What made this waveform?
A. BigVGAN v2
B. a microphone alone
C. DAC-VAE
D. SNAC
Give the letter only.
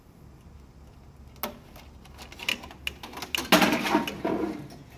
B